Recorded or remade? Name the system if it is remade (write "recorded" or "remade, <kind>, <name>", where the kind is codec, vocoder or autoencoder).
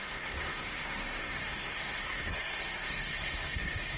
remade, codec, SNAC